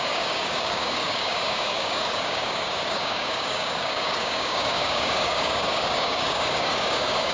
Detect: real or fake fake